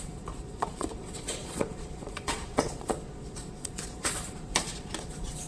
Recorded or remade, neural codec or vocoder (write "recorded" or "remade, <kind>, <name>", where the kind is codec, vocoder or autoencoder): remade, vocoder, Vocos